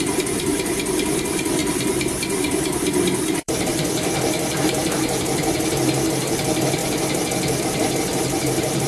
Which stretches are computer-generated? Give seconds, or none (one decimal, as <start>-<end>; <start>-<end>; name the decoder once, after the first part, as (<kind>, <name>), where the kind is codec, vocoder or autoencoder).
0.0-6.8 (vocoder, BigVGAN v2); 7.6-8.9